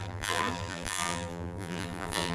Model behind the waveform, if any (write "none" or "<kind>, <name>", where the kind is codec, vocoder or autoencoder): vocoder, BigVGAN v2